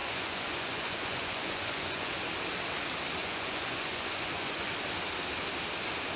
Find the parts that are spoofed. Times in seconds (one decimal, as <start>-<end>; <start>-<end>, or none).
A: 0.0-2.1; 3.2-4.7